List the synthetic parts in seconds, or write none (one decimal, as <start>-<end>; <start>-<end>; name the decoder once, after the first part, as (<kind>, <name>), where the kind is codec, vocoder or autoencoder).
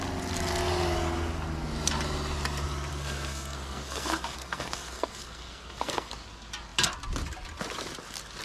2.9-6.1 (codec, SNAC)